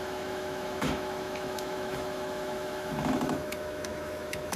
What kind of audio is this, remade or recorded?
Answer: remade